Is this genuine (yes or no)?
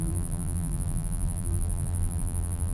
no